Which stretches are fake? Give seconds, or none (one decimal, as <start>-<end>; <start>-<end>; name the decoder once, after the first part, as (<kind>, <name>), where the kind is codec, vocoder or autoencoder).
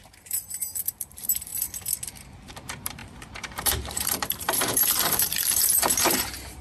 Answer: 0.0-0.4 (vocoder, BigVGAN v2); 1.0-1.5; 2.5-6.6